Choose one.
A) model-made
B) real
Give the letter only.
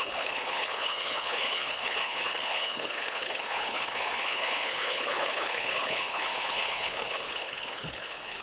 A